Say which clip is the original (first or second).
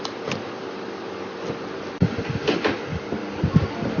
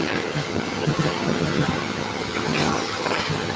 first